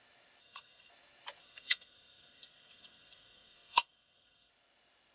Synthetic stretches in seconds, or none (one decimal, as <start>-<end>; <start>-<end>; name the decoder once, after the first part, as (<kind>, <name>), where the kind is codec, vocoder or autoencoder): 0.4-0.9 (codec, SNAC); 1.4-4.5

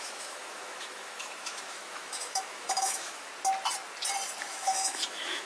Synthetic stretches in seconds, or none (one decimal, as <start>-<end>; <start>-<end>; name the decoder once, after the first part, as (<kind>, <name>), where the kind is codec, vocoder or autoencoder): 0.0-3.3 (autoencoder, DAC-VAE); 4.4-5.5

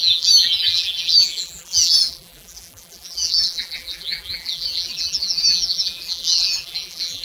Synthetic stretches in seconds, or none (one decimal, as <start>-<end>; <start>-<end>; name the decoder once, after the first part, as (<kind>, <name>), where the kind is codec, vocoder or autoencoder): 0.0-7.2 (vocoder, BigVGAN v2)

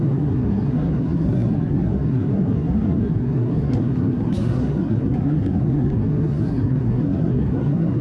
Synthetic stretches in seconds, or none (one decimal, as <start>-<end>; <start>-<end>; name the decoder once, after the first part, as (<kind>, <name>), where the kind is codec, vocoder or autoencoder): 0.0-8.0 (codec, SNAC)

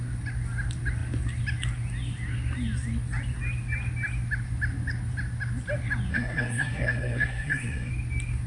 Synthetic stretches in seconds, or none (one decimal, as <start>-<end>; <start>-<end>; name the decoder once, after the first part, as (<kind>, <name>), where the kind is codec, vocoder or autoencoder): 6.1-7.9 (codec, SNAC)

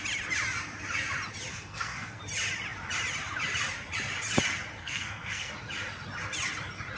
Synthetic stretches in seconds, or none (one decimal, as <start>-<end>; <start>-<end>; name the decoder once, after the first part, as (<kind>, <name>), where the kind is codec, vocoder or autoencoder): 1.5-2.2 (codec, SNAC); 4.8-5.5

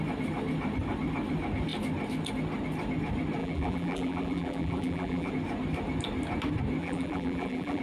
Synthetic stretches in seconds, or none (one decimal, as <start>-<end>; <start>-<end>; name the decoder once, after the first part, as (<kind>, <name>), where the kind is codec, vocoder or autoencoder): 3.4-5.3 (vocoder, BigVGAN v2); 6.8-7.8

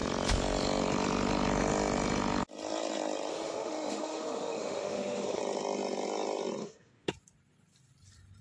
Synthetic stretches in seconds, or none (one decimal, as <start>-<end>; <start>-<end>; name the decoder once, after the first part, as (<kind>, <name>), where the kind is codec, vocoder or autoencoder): 3.3-5.4 (autoencoder, DAC-VAE); 6.6-7.1